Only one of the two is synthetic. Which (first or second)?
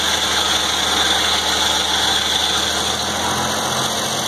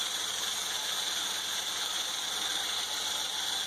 second